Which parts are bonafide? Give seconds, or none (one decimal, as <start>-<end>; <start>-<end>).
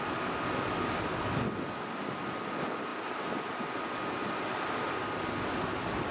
0.0-6.1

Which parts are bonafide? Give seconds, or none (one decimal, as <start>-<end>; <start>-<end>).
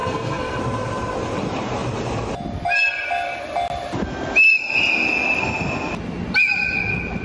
0.6-7.2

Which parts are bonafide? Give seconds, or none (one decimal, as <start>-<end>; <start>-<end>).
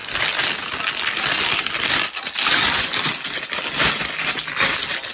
0.0-5.1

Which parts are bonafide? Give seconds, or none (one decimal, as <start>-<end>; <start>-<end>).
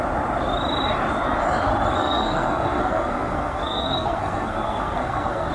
0.0-1.9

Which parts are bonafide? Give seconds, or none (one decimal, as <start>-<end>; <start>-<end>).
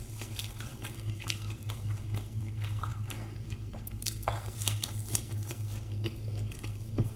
none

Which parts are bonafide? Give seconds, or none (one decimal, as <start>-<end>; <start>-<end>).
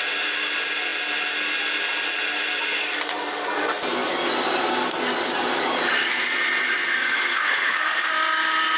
0.0-7.0; 8.1-8.8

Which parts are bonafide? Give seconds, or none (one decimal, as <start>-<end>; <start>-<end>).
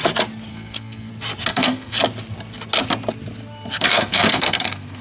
0.0-0.5; 1.1-1.5; 2.0-3.7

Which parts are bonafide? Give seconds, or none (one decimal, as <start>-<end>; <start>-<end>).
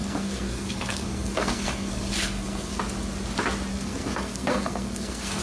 2.8-3.7